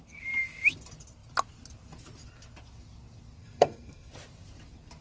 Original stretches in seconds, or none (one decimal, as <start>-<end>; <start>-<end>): 0.0-3.4; 4.1-5.0